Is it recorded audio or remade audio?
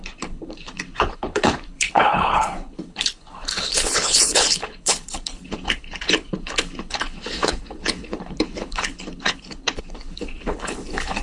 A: remade